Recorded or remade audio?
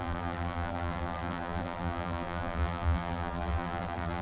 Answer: remade